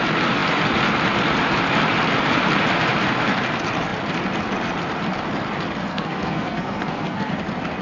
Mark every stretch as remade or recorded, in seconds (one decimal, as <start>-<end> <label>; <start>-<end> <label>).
0.0-5.9 recorded; 5.9-7.3 remade; 7.3-7.8 recorded